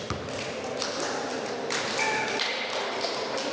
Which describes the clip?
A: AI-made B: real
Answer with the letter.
B